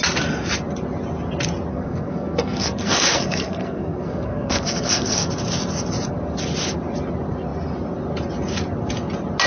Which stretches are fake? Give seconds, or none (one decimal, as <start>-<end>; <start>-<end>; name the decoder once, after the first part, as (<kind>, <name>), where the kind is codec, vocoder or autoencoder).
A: 1.7-5.3 (codec, SNAC)